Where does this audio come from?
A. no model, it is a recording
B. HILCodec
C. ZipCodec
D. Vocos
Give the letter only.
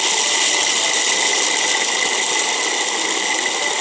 A